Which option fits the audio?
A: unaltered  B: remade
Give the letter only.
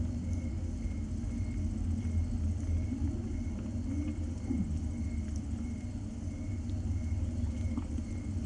A